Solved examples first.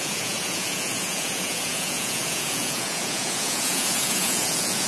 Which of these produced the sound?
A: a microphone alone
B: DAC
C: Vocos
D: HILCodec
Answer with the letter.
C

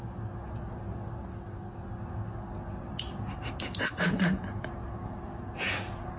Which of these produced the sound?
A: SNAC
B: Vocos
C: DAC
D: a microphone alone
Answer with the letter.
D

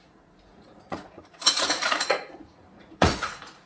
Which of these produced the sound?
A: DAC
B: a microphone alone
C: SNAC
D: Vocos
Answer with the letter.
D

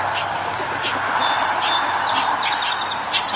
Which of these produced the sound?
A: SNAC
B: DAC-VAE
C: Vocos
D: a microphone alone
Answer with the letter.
D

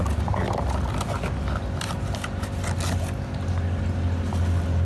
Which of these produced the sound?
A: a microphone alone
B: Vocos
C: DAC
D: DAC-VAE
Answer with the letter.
A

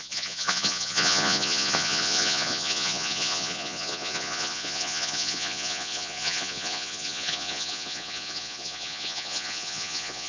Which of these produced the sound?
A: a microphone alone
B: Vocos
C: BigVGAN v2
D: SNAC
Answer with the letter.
B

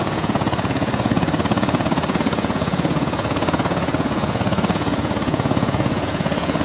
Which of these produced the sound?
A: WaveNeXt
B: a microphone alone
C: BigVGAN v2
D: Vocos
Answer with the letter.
D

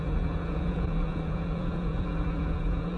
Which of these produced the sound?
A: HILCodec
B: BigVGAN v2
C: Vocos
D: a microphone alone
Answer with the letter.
C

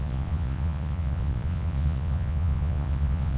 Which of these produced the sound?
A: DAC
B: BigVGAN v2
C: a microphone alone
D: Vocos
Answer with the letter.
D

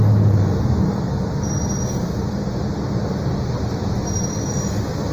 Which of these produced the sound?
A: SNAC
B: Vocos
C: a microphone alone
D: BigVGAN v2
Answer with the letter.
C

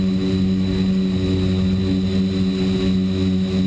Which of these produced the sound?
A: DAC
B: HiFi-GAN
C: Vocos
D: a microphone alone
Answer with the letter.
D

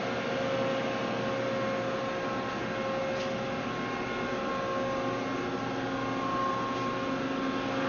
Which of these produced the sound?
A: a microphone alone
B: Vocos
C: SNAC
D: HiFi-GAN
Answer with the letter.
A